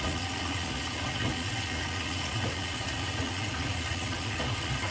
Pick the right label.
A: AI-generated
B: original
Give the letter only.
A